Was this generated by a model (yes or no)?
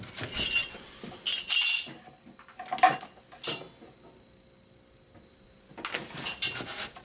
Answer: no